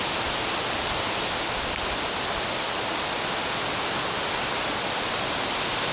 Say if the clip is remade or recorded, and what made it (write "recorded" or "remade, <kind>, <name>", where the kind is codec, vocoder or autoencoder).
recorded